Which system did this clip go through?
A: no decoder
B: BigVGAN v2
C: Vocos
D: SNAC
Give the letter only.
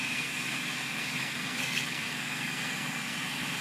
D